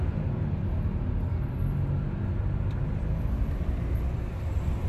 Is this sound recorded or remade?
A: recorded